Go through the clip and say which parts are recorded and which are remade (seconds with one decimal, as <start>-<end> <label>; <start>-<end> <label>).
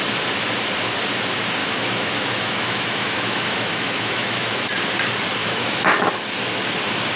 0.0-1.6 recorded; 1.6-4.6 remade; 4.6-5.4 recorded; 5.4-6.1 remade; 6.1-7.2 recorded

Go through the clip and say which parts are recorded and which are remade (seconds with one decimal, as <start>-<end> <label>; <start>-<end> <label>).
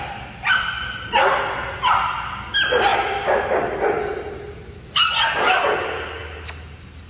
0.0-7.1 recorded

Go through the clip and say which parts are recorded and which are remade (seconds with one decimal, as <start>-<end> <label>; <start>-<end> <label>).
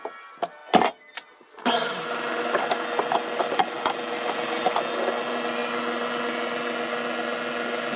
0.0-8.0 recorded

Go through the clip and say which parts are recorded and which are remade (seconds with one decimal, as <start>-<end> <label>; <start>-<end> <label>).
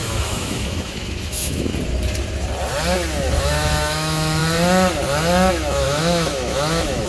0.0-1.7 remade; 1.7-3.4 recorded; 3.4-4.4 remade; 4.4-5.5 recorded; 5.5-7.1 remade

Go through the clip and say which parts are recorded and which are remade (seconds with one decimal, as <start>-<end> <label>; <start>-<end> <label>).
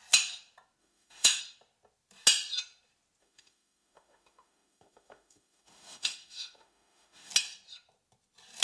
0.0-0.8 recorded; 0.8-1.4 remade; 1.4-3.2 recorded; 3.2-7.3 remade; 7.3-8.6 recorded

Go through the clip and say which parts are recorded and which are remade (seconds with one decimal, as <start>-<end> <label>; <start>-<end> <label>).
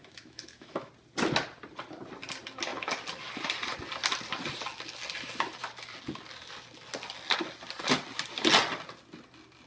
0.0-0.9 remade; 0.9-9.7 recorded